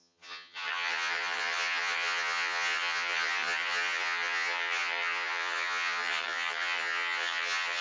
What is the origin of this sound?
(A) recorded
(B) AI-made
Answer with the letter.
B